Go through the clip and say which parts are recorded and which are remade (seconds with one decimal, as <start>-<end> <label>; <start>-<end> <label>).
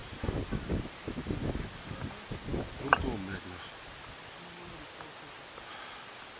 0.0-6.4 recorded